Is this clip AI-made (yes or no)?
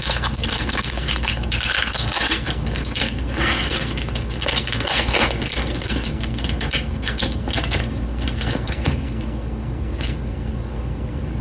yes